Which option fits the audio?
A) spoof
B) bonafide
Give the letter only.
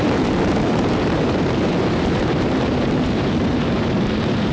A